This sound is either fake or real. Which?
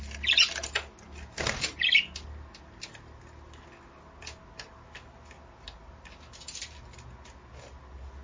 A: real